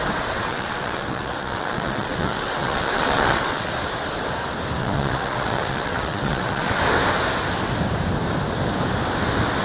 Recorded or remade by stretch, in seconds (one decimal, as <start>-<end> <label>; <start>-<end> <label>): 0.0-0.5 recorded; 0.5-3.7 remade; 3.7-4.8 recorded; 4.8-6.8 remade; 6.8-9.6 recorded